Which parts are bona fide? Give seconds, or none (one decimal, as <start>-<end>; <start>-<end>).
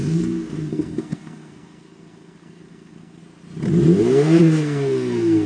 3.2-4.0